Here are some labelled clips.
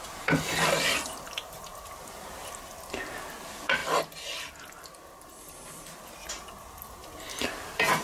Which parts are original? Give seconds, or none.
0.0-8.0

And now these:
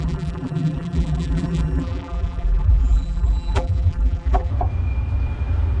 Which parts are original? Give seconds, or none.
4.5-5.8